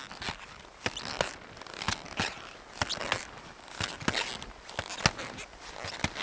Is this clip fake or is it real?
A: real